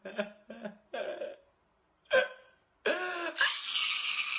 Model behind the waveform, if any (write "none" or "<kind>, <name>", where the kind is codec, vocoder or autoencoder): none